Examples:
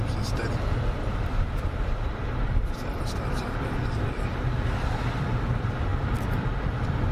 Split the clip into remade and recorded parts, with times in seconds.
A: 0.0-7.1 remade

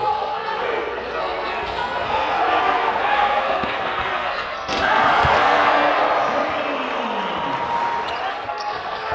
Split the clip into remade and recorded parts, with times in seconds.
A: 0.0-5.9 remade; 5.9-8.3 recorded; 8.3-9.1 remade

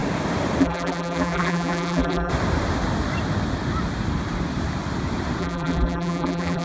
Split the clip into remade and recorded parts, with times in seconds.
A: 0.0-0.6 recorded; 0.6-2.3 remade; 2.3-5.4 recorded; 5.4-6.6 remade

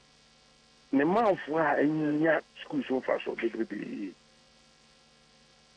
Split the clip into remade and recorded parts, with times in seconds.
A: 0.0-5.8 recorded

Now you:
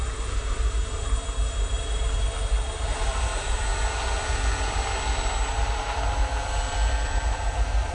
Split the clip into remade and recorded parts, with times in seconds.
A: 0.0-3.7 remade; 3.7-7.3 recorded; 7.3-7.9 remade

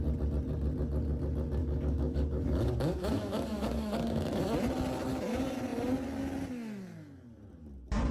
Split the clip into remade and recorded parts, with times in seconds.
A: 0.0-1.6 recorded; 1.6-4.4 remade; 4.4-8.1 recorded

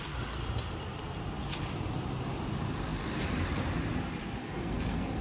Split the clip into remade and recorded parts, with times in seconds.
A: 0.0-4.4 recorded; 4.4-5.2 remade